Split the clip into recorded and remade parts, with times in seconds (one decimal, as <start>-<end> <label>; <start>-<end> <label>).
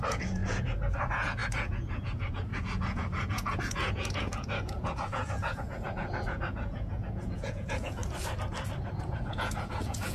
0.0-8.0 remade; 8.0-8.9 recorded; 8.9-10.1 remade